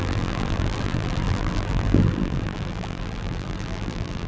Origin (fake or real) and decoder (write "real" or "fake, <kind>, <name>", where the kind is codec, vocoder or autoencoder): fake, vocoder, BigVGAN v2